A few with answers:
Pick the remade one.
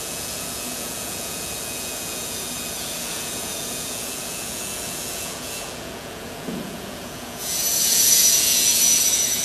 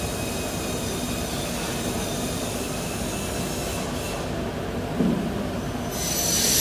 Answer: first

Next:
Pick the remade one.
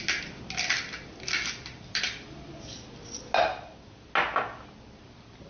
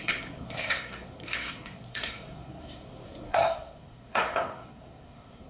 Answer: second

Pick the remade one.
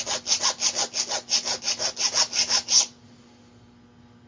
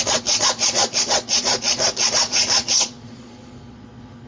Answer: second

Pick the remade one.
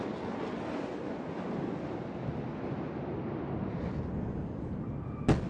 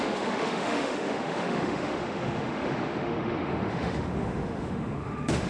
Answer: second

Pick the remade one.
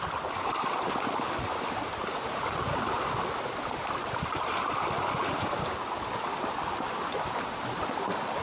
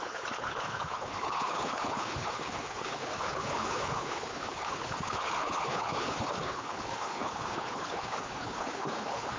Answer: second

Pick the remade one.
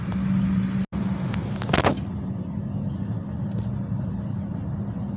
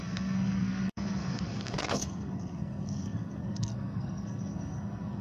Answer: second